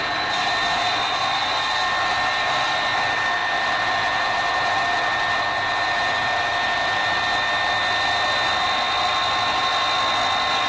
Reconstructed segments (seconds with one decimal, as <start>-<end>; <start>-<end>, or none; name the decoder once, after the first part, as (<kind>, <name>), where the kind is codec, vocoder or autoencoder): none